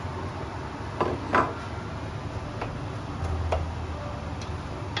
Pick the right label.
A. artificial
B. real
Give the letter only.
B